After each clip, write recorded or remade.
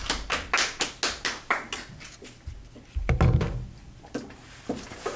recorded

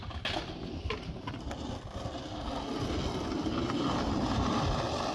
recorded